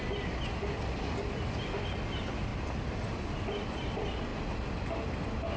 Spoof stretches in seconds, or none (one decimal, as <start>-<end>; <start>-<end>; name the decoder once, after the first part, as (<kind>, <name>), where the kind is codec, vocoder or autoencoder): none